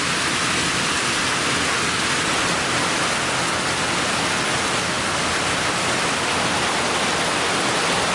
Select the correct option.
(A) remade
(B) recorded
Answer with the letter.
B